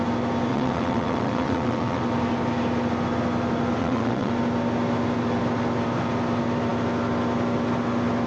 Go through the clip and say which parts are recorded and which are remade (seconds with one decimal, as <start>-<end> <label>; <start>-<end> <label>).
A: 0.0-0.5 recorded; 0.5-2.0 remade; 2.0-3.8 recorded; 3.8-4.3 remade; 4.3-8.3 recorded